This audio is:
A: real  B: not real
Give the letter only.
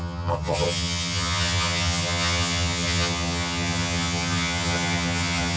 B